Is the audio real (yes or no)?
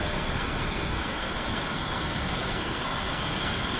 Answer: no